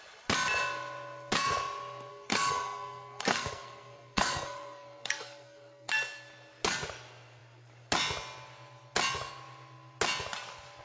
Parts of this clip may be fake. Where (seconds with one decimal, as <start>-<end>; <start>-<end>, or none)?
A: 2.1-5.9